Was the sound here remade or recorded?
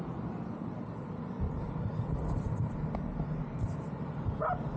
recorded